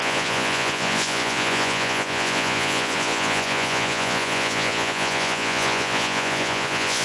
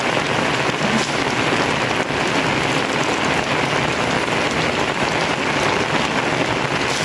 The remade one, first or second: first